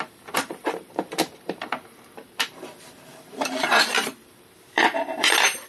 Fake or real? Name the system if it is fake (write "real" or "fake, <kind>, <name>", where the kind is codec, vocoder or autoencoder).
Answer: fake, vocoder, BigVGAN v2